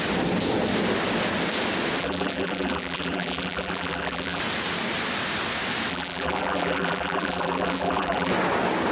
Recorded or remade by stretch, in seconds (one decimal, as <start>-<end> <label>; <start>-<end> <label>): 0.0-2.0 recorded; 2.0-4.4 remade; 4.4-5.9 recorded; 5.9-8.3 remade; 8.3-8.9 recorded